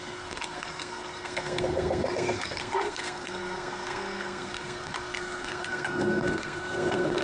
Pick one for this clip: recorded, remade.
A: remade